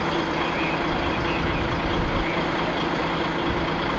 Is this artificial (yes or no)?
no